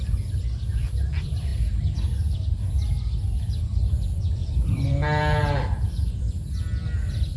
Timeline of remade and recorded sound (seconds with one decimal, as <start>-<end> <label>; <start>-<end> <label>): 0.0-4.4 recorded; 4.4-6.2 remade; 6.2-7.4 recorded